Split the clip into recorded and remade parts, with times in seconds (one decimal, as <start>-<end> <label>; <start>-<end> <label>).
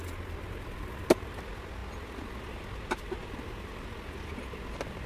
0.0-5.1 recorded